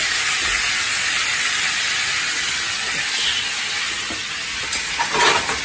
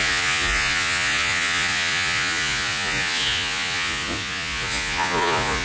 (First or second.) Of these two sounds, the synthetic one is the second